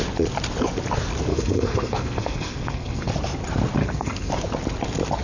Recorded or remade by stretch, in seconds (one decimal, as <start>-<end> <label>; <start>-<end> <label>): 0.0-1.3 recorded; 1.3-3.1 remade; 3.1-3.8 recorded; 3.8-4.3 remade; 4.3-5.2 recorded